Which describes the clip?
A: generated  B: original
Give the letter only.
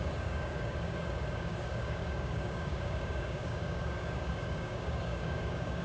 A